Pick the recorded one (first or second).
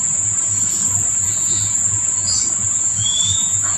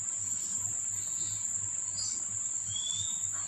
second